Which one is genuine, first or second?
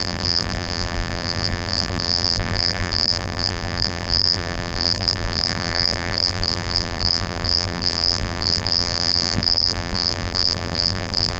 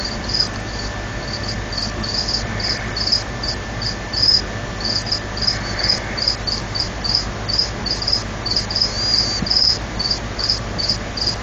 second